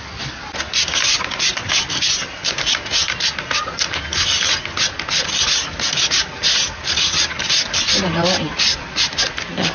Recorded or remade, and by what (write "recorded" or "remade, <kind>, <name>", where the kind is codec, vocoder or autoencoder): recorded